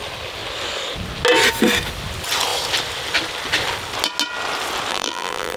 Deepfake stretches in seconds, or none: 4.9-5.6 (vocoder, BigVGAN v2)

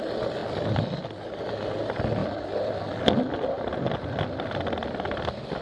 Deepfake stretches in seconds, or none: none

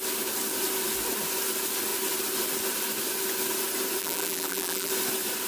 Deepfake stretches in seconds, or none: 4.0-4.9 (vocoder, BigVGAN v2)

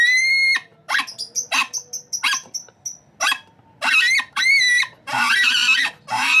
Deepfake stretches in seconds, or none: 0.0-0.7 (vocoder, BigVGAN v2); 4.3-6.4

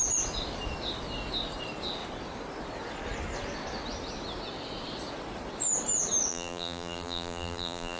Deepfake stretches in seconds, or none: 6.3-8.0 (vocoder, BigVGAN v2)